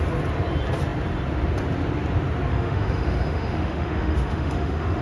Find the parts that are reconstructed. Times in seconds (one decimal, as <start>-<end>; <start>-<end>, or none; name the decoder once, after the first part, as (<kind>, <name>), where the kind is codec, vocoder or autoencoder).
2.5-5.0 (autoencoder, DAC-VAE)